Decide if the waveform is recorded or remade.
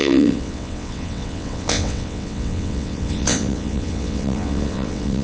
remade